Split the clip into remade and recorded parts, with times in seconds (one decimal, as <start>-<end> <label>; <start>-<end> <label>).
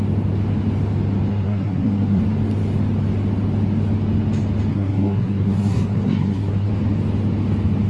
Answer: 0.0-1.3 recorded; 1.3-2.2 remade; 2.2-4.7 recorded; 4.7-6.7 remade; 6.7-7.9 recorded